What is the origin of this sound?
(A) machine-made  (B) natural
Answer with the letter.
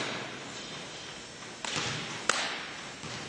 B